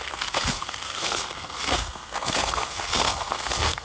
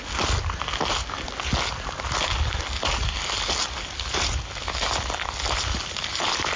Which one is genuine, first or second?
second